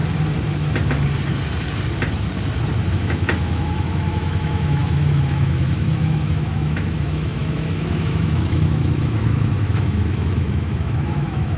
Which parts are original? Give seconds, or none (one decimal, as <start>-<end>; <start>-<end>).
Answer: 0.0-2.9